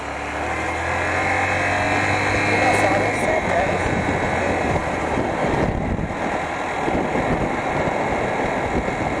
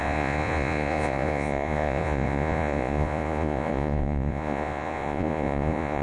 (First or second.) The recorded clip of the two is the first